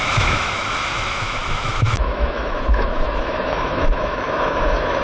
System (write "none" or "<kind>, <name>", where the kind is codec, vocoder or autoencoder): autoencoder, DAC-VAE